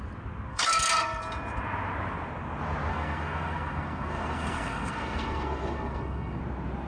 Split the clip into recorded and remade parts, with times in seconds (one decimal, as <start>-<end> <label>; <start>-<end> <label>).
0.0-0.5 recorded; 0.5-1.2 remade; 1.2-2.9 recorded; 2.9-6.4 remade; 6.4-6.9 recorded